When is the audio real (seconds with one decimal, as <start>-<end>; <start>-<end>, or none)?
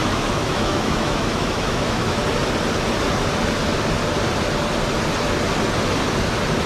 2.2-6.7